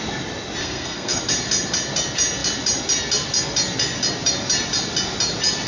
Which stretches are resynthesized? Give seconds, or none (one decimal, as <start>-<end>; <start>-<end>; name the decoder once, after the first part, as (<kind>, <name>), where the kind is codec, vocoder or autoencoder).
0.6-1.2 (codec, SNAC)